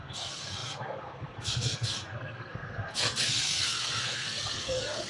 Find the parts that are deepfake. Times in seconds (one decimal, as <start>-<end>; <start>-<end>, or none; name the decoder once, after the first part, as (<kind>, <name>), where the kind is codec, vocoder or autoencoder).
0.0-5.1 (codec, SNAC)